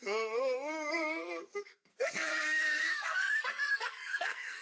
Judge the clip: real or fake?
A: fake